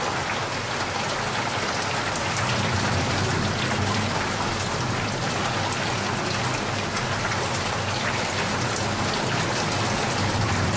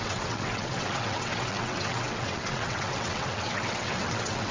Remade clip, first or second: second